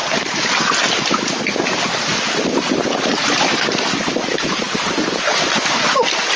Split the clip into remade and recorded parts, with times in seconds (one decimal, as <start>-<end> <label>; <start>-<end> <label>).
0.0-6.4 recorded